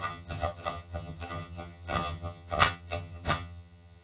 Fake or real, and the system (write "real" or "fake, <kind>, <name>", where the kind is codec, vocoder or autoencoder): fake, vocoder, HiFi-GAN